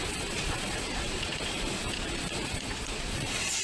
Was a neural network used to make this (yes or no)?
yes